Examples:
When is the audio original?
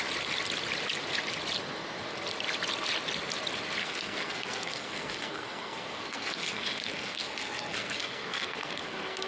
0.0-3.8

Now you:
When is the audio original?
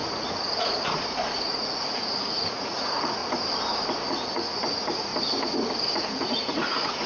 3.2-4.1; 5.1-5.9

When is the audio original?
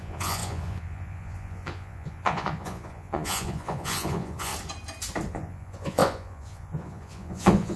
4.5-5.3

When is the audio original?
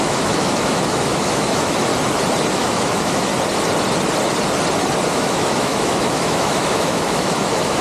1.9-2.5; 3.3-5.1